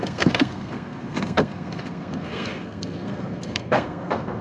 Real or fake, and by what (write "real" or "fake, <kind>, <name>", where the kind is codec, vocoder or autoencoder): fake, codec, SNAC